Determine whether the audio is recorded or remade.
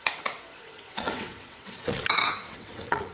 remade